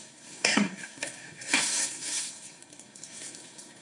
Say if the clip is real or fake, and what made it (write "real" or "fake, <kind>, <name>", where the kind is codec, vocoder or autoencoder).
fake, codec, SNAC